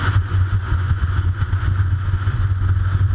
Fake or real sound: fake